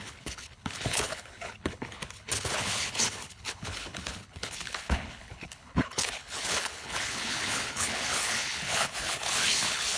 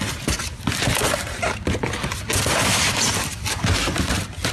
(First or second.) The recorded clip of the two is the second